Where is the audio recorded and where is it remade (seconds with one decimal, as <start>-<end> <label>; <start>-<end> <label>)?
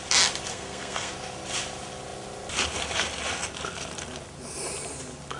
0.0-0.5 recorded; 0.5-1.1 remade; 1.1-5.4 recorded